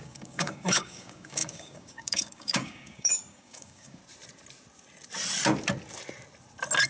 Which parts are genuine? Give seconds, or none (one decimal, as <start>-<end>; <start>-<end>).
4.0-6.9